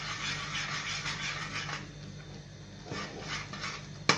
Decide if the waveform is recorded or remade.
recorded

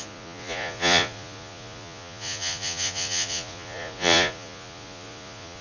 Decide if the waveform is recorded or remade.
remade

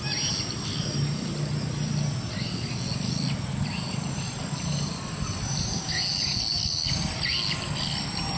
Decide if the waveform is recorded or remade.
recorded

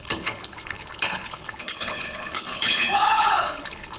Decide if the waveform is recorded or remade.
remade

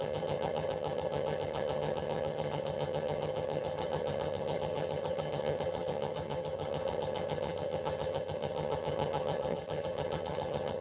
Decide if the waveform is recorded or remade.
remade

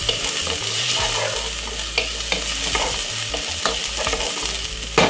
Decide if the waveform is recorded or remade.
recorded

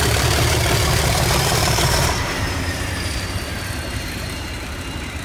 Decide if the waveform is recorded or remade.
remade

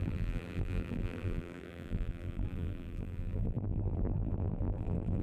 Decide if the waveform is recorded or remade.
remade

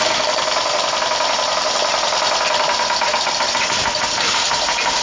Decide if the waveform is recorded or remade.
recorded